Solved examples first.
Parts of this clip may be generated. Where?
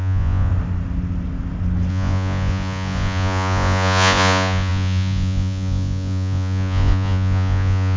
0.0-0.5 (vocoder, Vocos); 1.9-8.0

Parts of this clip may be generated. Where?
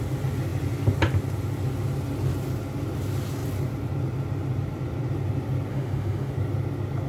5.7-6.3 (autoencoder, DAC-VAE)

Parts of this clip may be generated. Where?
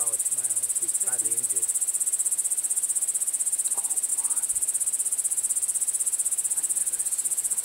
none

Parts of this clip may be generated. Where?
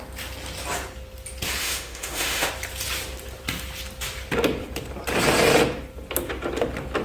1.6-2.5 (autoencoder, DAC-VAE)